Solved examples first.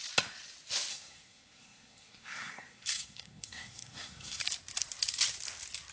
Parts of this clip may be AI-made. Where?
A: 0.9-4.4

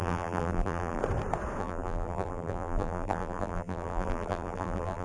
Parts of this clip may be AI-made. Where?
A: 0.0-1.0; 1.6-5.0

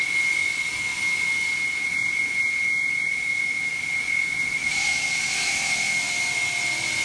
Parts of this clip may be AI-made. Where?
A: 3.1-3.7; 4.6-6.2